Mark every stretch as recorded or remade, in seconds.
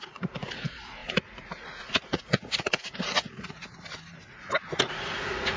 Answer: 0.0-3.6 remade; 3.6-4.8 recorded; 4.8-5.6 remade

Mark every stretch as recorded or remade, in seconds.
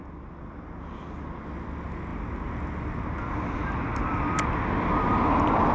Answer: 0.0-5.7 recorded